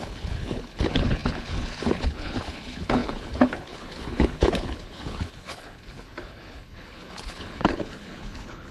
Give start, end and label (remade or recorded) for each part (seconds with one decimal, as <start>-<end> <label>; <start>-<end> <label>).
0.0-8.7 remade